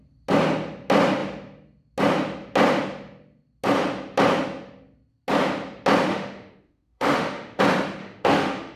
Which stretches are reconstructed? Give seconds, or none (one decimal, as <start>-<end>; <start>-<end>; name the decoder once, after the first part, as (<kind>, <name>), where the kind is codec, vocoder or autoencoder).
6.1-7.6 (autoencoder, DAC-VAE); 8.0-8.8